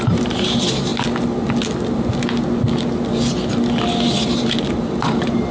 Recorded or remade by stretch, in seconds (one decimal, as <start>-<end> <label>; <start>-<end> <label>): 0.0-0.9 remade; 0.9-4.2 recorded; 4.2-5.5 remade